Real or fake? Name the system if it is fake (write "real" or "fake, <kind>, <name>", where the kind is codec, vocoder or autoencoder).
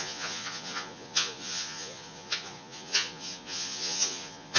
fake, vocoder, Vocos